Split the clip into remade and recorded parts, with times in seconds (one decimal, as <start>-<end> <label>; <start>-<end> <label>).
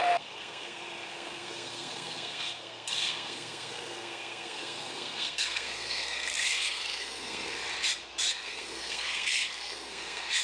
0.0-7.6 remade; 7.6-8.3 recorded; 8.3-10.4 remade